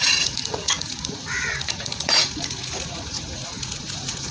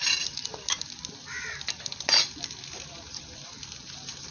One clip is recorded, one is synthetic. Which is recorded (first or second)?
second